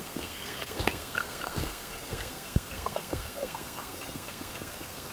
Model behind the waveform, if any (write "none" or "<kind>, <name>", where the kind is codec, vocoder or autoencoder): codec, SNAC